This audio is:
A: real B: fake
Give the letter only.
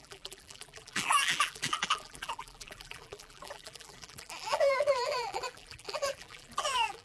B